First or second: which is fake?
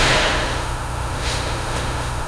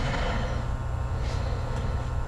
first